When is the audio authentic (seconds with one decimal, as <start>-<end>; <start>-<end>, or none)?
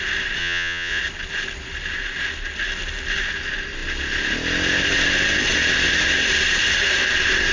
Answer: 0.0-0.4; 1.0-7.5